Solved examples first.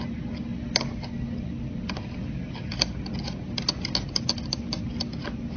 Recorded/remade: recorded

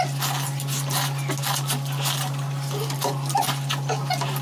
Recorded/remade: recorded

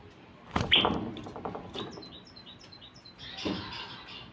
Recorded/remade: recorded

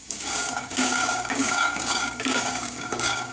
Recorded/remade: remade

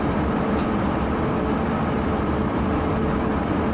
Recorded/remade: remade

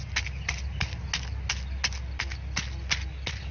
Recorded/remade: recorded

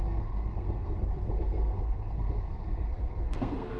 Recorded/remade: remade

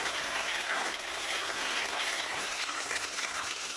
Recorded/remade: remade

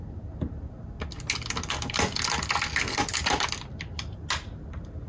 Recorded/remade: recorded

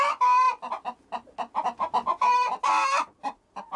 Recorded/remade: recorded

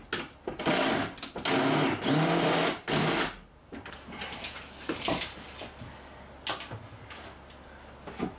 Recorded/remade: recorded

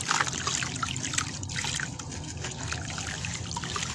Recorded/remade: recorded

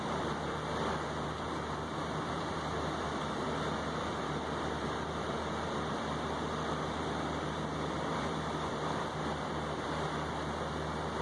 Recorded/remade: remade